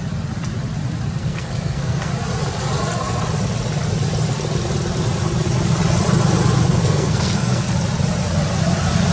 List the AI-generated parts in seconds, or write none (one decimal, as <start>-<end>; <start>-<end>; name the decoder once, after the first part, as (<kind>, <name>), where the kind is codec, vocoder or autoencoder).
1.2-2.1 (codec, SNAC); 6.7-7.7